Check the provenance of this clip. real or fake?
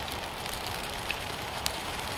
fake